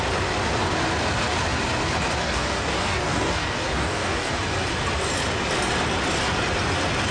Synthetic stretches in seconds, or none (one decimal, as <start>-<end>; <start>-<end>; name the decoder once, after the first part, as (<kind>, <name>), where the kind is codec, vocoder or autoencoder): 2.2-4.3 (codec, DAC)